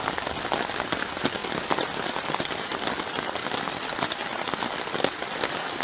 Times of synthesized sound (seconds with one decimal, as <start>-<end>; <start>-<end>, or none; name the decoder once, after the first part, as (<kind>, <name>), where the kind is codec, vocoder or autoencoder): 3.4-4.6 (vocoder, BigVGAN v2)